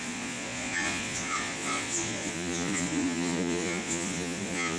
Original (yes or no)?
no